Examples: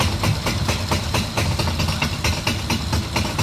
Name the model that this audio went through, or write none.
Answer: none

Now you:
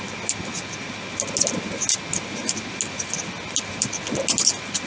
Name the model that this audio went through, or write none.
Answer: none